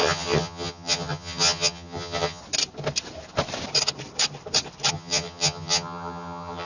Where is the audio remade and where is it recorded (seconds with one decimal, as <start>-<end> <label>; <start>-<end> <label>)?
0.0-2.4 remade; 2.4-4.9 recorded; 4.9-6.7 remade